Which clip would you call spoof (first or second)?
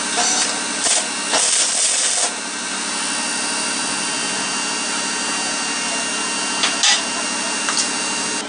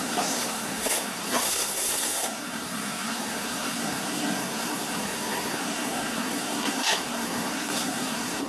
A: second